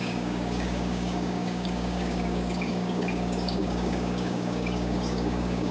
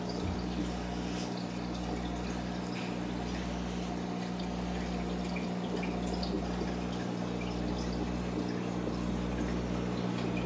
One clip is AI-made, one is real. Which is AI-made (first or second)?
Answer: first